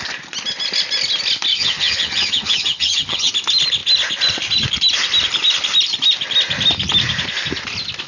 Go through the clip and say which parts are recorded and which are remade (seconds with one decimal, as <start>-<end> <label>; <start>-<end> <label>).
0.0-1.5 recorded; 1.5-3.3 remade; 3.3-8.1 recorded